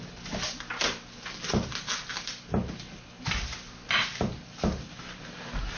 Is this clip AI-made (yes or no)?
no